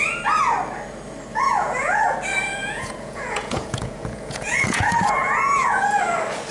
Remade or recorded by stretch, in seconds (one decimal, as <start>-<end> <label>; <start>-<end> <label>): 0.0-1.3 recorded; 1.3-2.0 remade; 2.0-2.6 recorded; 2.6-6.0 remade; 6.0-6.5 recorded